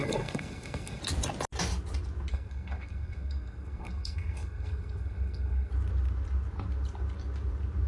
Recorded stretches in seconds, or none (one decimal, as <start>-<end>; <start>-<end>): 1.0-2.3; 5.7-7.9